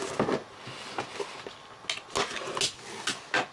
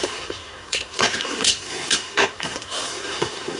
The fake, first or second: second